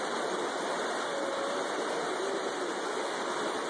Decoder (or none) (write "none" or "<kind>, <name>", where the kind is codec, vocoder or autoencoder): none